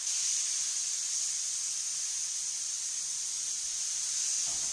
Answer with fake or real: real